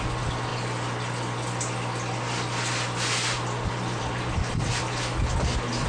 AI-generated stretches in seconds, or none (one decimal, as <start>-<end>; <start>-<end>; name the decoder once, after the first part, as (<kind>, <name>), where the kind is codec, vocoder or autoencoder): none